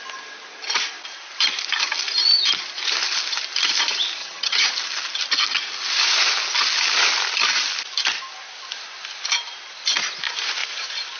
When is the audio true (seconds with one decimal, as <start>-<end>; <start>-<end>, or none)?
0.0-4.2; 4.7-11.2